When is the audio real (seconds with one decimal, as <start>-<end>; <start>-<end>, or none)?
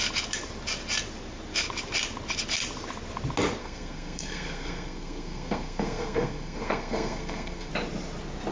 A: 0.0-3.6; 7.7-8.5